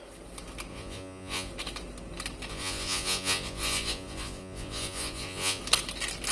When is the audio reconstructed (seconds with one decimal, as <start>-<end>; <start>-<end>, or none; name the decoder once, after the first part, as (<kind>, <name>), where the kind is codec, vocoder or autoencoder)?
0.7-1.5 (vocoder, Vocos); 2.5-5.6